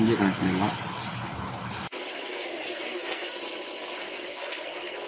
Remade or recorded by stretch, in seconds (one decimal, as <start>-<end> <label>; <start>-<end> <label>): 0.0-2.1 recorded; 2.1-3.4 remade; 3.4-4.0 recorded; 4.0-5.1 remade